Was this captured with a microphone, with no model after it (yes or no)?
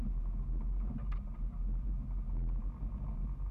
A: yes